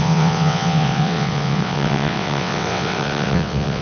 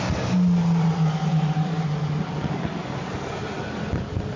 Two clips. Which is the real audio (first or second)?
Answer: second